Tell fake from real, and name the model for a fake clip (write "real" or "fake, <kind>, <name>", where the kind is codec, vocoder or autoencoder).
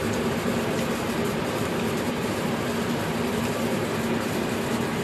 fake, vocoder, BigVGAN v2